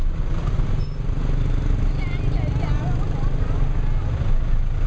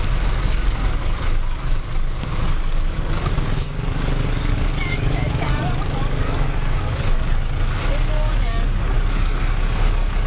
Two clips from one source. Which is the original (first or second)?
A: first